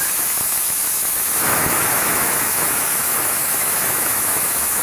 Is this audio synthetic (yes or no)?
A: yes